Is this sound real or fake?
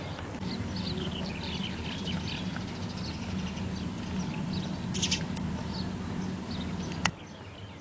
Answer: real